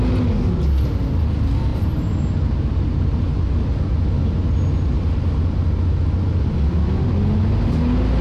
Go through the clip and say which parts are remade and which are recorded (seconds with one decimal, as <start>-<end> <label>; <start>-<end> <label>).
0.0-1.7 recorded; 1.7-3.4 remade; 3.4-8.2 recorded